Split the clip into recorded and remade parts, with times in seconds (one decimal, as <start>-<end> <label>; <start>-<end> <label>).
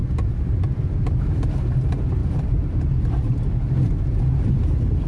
0.0-1.2 remade; 1.2-2.2 recorded; 2.2-3.4 remade; 3.4-5.1 recorded